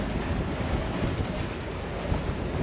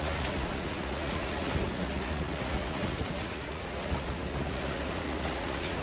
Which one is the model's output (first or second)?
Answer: second